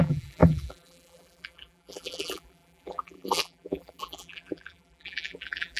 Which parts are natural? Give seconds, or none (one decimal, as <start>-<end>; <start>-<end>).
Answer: none